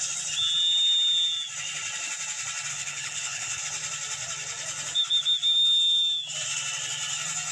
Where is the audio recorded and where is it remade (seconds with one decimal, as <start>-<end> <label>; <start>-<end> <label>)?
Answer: 0.0-2.7 recorded; 2.7-3.6 remade; 3.6-7.5 recorded